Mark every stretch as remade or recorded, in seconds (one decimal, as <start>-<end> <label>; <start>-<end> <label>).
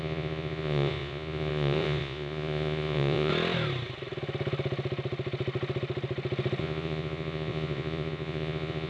0.0-3.3 remade; 3.3-6.6 recorded; 6.6-8.9 remade